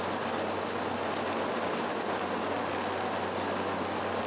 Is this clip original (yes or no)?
yes